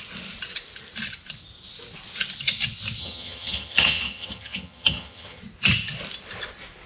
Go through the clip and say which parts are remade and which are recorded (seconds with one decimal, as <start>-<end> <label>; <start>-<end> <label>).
0.0-3.0 recorded; 3.0-5.4 remade; 5.4-6.9 recorded